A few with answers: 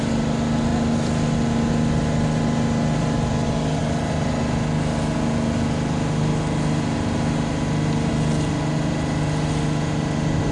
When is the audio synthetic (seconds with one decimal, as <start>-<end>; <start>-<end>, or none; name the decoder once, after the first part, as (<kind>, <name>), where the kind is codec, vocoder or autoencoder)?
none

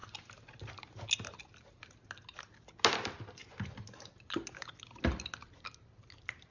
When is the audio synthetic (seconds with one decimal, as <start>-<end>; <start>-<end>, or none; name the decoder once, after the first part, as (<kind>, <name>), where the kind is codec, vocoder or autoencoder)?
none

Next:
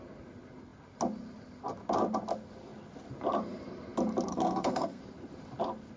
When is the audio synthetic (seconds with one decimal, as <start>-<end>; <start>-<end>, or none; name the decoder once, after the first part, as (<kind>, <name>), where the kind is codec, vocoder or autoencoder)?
4.3-5.0 (codec, SNAC)